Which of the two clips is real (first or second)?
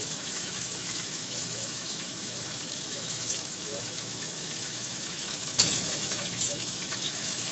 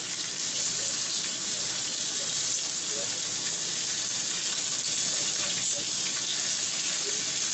second